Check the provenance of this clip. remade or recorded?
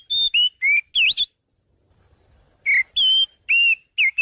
recorded